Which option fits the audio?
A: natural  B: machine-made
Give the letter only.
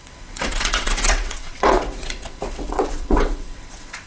B